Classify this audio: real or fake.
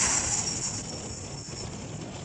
real